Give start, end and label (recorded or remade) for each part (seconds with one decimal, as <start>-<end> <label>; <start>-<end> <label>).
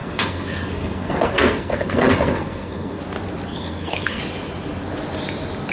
0.0-3.0 remade; 3.0-3.5 recorded; 3.5-4.2 remade; 4.2-5.7 recorded